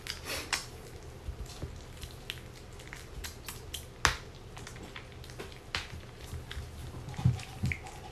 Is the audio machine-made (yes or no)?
no